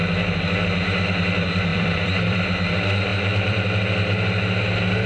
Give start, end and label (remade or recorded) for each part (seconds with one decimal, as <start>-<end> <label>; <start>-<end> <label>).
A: 0.0-1.7 recorded; 1.7-2.4 remade; 2.4-3.1 recorded; 3.1-3.8 remade; 3.8-5.1 recorded